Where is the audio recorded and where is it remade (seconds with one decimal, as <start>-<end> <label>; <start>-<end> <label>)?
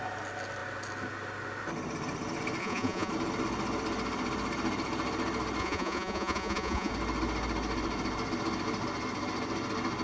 0.0-2.6 recorded; 2.6-3.1 remade; 3.1-5.6 recorded; 5.6-6.9 remade; 6.9-10.0 recorded